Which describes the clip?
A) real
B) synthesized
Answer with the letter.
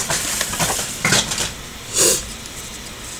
B